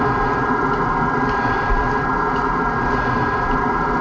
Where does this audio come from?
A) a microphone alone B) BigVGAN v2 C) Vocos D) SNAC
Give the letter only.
A